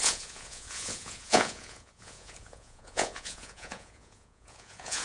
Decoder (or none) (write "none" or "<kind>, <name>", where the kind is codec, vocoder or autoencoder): vocoder, Vocos